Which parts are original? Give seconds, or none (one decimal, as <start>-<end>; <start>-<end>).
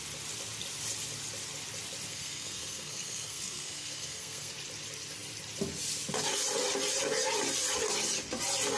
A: 0.0-2.1; 4.5-8.8